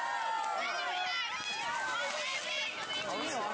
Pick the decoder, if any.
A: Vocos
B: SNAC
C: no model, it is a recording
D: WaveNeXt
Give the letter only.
C